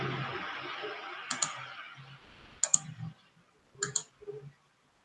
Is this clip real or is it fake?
real